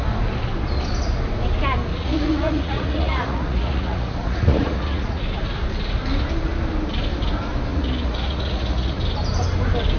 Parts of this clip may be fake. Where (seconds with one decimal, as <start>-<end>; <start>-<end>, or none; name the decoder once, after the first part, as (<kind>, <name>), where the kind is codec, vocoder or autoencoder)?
1.9-5.2 (vocoder, Vocos); 7.7-9.0